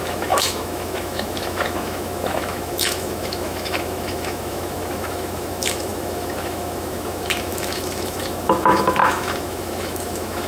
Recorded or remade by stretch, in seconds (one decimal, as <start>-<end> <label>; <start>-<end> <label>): 0.0-10.5 remade